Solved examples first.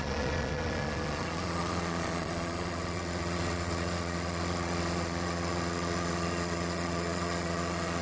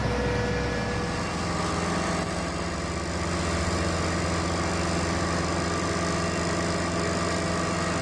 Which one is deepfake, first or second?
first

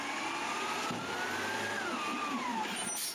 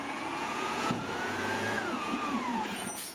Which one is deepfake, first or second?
second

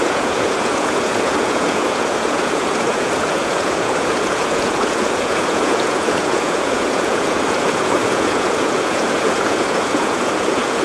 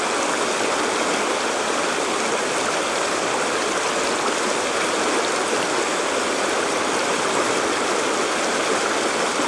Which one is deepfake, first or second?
first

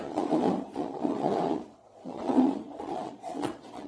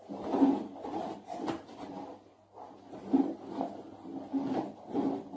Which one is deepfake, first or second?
first